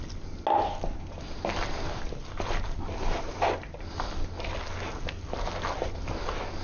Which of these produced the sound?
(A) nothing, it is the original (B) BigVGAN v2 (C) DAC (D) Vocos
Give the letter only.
A